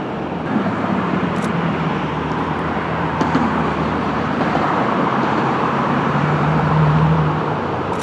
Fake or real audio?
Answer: fake